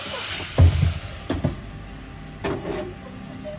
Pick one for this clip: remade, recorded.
recorded